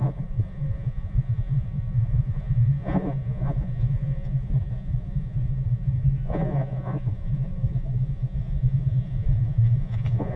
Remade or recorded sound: remade